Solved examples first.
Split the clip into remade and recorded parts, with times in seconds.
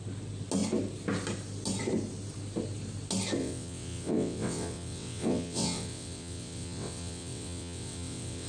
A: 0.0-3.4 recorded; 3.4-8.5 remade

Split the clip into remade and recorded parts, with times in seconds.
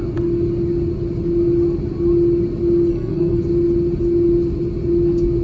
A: 0.0-2.9 recorded; 2.9-3.4 remade; 3.4-5.4 recorded